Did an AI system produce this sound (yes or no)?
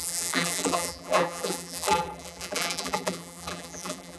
yes